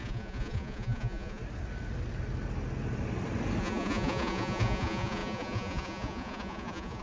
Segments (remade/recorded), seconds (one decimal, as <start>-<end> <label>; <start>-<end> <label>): 0.0-1.4 remade; 1.4-3.6 recorded; 3.6-7.0 remade